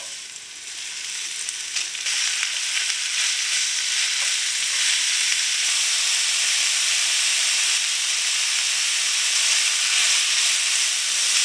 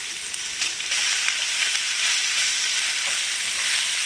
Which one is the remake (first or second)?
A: second